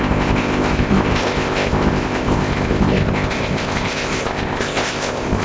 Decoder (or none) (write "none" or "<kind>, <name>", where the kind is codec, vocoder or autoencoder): codec, ZipCodec